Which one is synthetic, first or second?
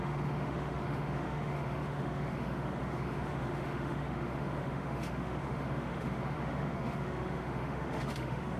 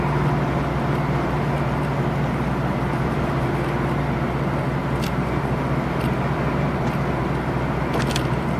first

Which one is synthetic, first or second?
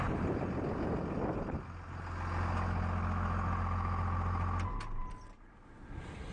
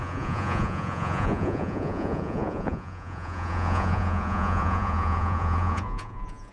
second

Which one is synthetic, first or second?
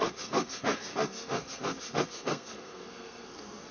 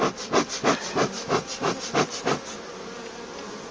first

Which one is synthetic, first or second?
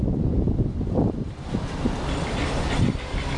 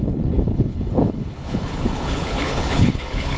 second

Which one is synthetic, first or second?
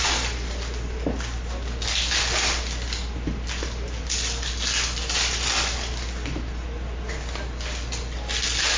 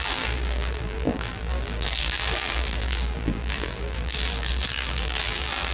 second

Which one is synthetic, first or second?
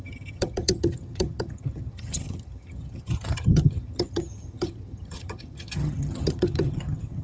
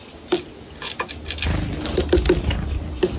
first